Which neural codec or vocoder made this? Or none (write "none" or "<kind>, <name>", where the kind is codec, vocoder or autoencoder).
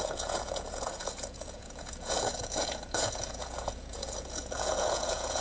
vocoder, Vocos